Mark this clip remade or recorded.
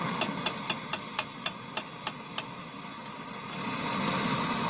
recorded